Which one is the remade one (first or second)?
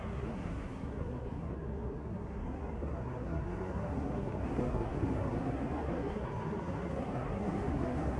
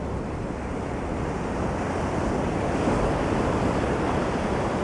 first